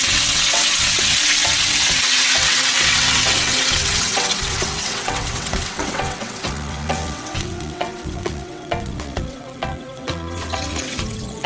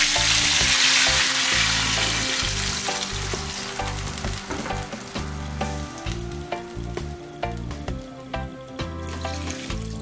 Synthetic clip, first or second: first